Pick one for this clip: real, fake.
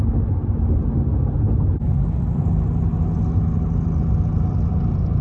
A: real